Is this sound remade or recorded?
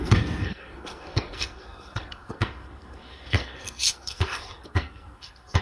remade